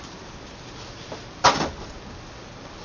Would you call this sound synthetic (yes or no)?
no